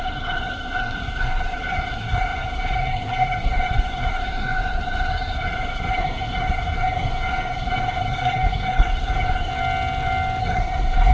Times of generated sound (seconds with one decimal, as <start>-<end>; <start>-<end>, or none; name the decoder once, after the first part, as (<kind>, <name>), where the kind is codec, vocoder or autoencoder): 0.0-9.5 (codec, SNAC); 10.4-11.1